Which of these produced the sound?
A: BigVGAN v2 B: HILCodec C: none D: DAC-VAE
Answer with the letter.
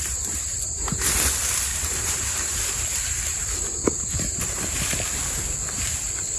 A